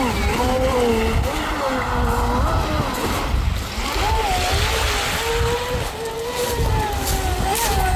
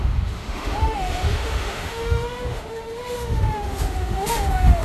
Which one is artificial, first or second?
second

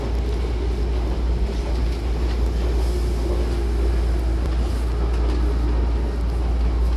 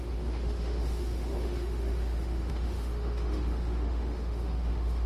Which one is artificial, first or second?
second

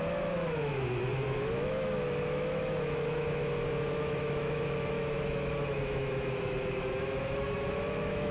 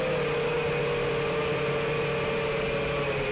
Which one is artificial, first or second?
first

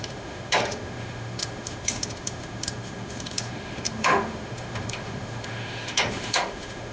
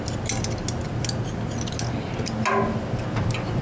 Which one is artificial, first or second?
first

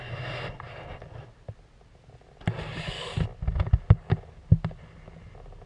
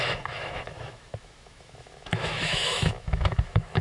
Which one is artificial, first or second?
second